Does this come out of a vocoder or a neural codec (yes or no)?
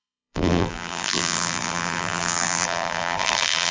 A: yes